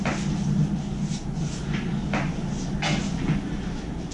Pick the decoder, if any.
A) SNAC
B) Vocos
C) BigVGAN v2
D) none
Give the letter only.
D